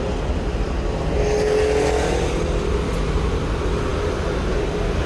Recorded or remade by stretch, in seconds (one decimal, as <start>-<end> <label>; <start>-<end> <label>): 0.0-5.1 recorded